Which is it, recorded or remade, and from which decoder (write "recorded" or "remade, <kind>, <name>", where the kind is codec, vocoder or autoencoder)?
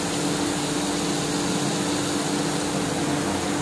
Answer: recorded